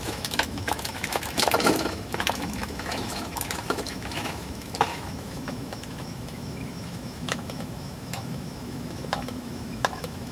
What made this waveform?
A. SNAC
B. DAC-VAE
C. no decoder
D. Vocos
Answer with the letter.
B